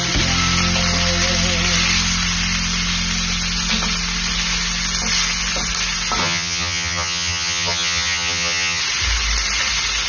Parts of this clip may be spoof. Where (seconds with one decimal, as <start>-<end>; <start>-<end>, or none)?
6.2-8.8